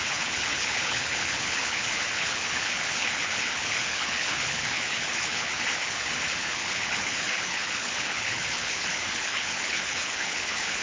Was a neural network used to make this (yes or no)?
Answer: yes